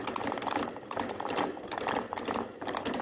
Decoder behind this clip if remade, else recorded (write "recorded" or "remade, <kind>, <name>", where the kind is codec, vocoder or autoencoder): recorded